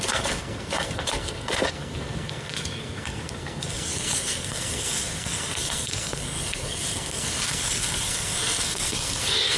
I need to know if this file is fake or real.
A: fake